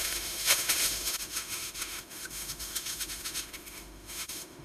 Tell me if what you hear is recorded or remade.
remade